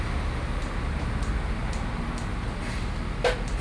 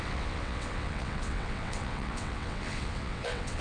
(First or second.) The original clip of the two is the first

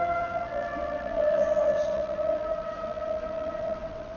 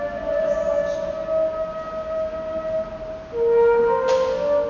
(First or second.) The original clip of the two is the second